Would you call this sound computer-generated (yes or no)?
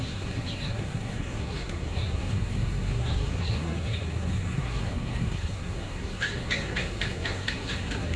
yes